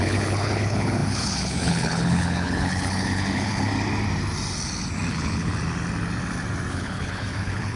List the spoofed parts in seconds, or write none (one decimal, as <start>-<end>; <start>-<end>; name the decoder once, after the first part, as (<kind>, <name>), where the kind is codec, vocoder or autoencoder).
0.0-3.7 (codec, HILCodec); 5.1-5.5; 6.7-7.8